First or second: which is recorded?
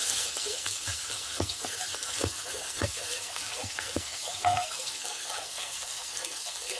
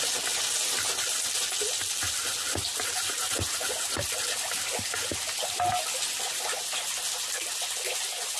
second